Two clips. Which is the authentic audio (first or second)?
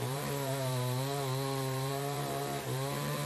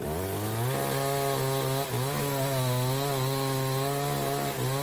second